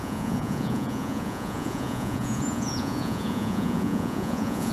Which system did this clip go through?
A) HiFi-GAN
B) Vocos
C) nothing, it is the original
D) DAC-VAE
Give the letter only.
B